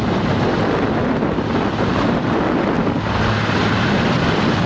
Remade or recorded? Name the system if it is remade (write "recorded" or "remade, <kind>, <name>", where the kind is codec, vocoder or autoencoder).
recorded